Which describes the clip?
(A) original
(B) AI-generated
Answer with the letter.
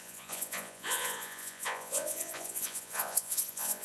B